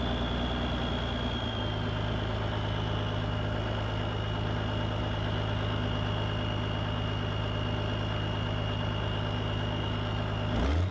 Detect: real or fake real